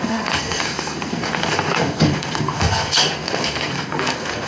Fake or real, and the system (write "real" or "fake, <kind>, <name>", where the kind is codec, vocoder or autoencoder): fake, codec, SNAC